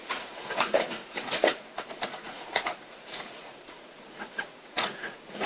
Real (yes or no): no